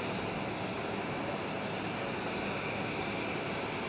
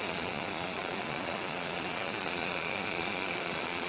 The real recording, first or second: first